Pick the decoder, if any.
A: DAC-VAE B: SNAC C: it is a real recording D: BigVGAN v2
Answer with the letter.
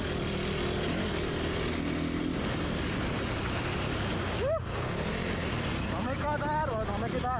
C